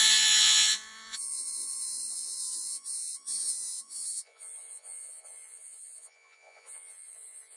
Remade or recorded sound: remade